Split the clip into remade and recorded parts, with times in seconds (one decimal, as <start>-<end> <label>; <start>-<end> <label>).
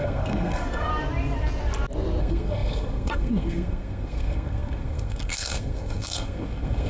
0.0-0.9 remade; 0.9-2.2 recorded; 2.2-6.9 remade